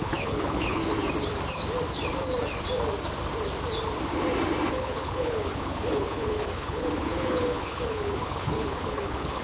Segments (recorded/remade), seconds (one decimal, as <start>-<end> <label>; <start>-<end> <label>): 0.0-0.8 remade; 0.8-4.7 recorded; 4.7-9.4 remade